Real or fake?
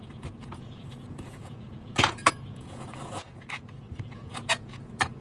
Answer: fake